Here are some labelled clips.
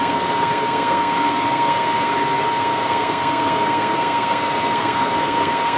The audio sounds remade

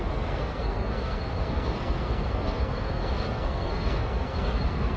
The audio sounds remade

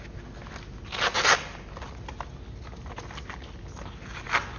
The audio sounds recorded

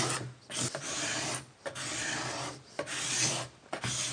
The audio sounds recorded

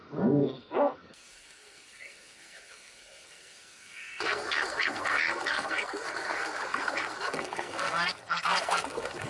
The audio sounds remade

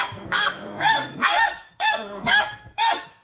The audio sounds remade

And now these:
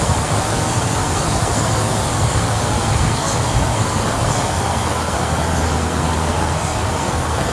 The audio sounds remade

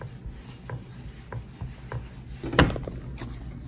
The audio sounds recorded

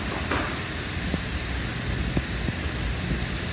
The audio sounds recorded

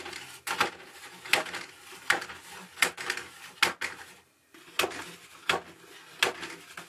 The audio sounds recorded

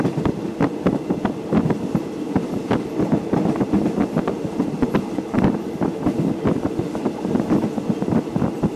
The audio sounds recorded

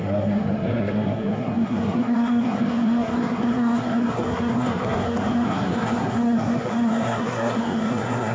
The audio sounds remade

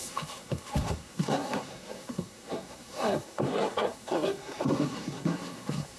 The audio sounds remade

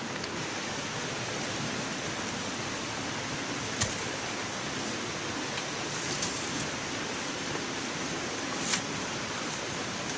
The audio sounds recorded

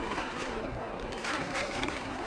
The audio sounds remade